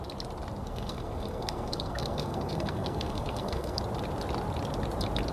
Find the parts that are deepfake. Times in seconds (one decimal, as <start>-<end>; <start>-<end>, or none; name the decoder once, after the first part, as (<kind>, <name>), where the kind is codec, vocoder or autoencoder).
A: 0.6-3.8 (codec, SNAC)